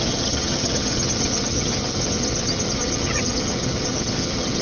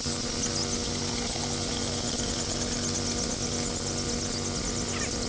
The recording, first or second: second